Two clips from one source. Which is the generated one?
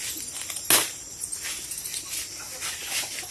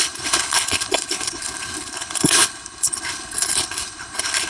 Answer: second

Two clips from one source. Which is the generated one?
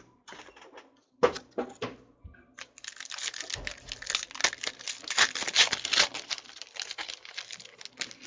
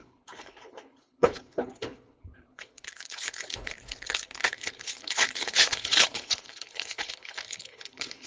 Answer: second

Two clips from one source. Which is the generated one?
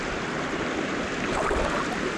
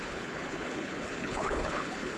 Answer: second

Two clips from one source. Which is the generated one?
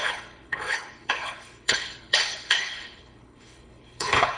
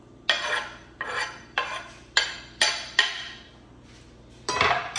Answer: first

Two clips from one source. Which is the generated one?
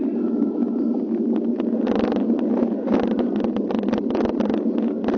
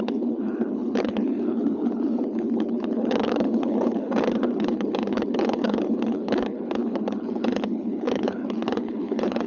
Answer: second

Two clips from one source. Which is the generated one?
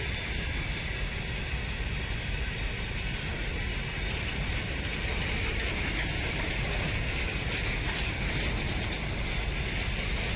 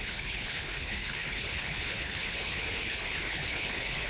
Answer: second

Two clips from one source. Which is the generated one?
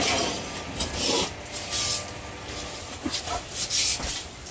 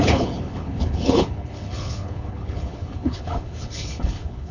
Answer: second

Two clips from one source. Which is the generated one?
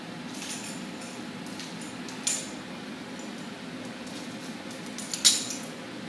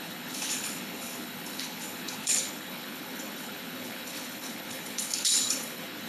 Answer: second